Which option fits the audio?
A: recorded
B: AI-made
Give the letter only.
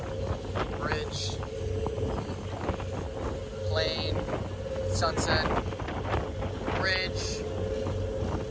A